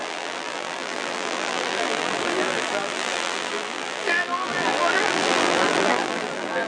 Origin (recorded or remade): remade